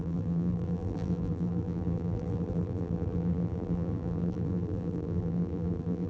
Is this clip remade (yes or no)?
yes